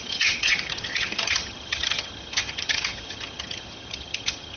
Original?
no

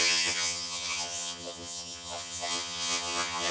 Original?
no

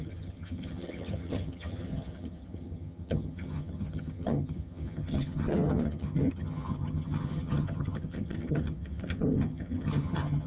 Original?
no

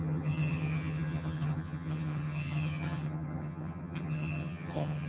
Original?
no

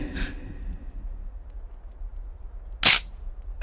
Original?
yes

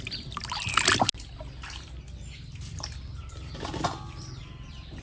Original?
yes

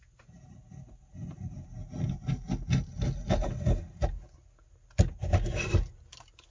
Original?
yes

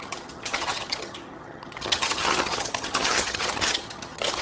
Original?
no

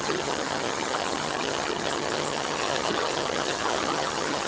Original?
no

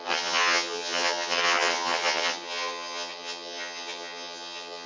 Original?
no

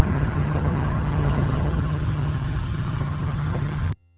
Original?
no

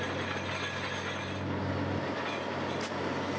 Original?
yes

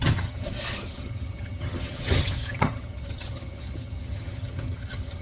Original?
no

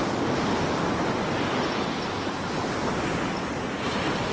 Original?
yes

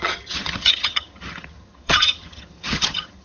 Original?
no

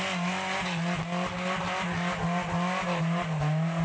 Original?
yes